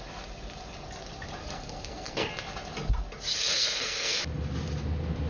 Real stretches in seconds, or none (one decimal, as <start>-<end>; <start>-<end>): 0.0-1.4; 2.3-3.3; 4.2-5.3